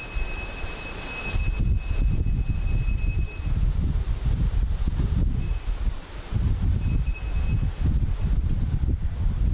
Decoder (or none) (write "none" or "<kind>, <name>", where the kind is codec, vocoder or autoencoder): none